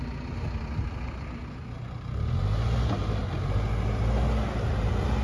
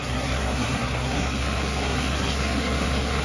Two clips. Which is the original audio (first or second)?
first